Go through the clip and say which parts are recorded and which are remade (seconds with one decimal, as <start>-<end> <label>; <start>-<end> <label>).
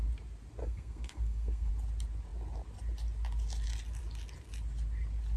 0.0-0.6 recorded; 0.6-1.7 remade; 1.7-5.4 recorded